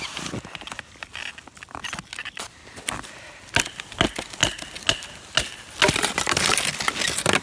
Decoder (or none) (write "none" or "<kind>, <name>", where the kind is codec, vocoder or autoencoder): none